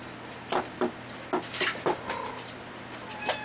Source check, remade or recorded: recorded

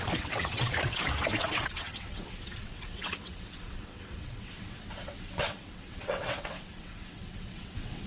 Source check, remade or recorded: remade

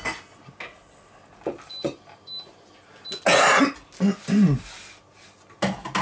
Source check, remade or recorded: recorded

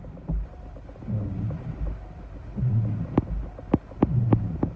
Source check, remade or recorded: recorded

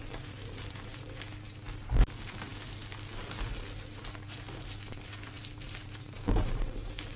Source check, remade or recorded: recorded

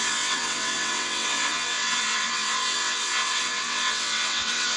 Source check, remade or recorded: remade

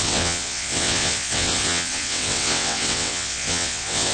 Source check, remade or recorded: remade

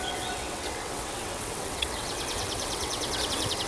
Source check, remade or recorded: remade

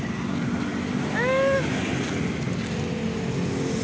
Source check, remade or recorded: recorded